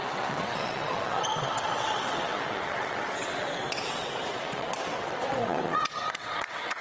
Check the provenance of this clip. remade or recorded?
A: remade